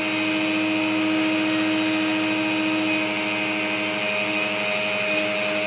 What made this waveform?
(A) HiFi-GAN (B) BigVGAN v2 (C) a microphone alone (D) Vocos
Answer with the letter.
C